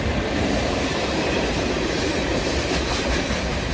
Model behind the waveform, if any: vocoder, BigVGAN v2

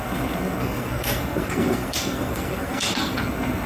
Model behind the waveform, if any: codec, SNAC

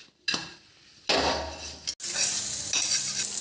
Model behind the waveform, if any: none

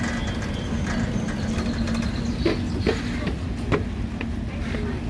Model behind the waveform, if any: none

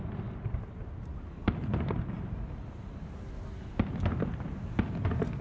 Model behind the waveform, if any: none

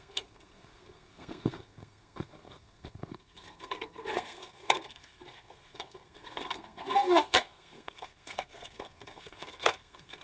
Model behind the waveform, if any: codec, SNAC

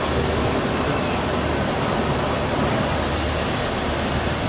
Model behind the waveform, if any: none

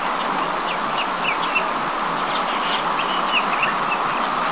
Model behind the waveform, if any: none